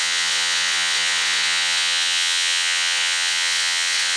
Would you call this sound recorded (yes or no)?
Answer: no